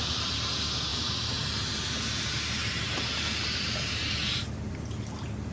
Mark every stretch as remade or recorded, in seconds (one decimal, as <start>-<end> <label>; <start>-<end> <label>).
0.0-0.9 recorded; 0.9-1.5 remade; 1.5-2.6 recorded; 2.6-4.4 remade; 4.4-5.5 recorded